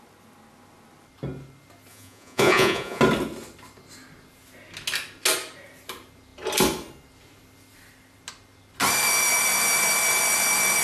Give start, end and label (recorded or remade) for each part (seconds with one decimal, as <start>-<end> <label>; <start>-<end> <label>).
0.0-1.9 recorded; 1.9-3.0 remade; 3.0-10.8 recorded